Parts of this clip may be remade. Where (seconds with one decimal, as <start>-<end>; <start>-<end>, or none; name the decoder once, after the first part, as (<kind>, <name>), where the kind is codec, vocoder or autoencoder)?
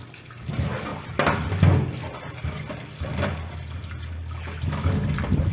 none